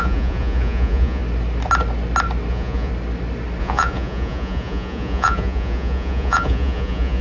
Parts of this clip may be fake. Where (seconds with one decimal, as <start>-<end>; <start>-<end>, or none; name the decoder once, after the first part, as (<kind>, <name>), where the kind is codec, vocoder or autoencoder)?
0.0-1.2 (vocoder, Vocos); 2.5-2.9; 3.6-7.2